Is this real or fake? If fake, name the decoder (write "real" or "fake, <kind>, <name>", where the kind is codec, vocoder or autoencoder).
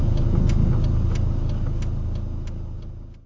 real